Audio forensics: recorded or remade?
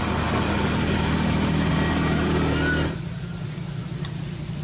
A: recorded